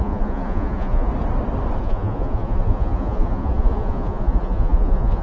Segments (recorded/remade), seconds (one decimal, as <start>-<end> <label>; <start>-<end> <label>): 0.0-1.1 remade; 1.1-1.8 recorded; 1.8-5.2 remade